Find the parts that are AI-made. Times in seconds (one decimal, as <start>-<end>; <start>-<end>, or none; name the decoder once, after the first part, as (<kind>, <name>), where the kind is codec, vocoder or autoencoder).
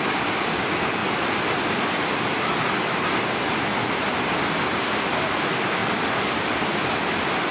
none